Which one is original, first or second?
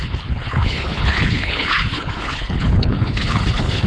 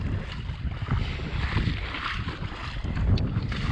second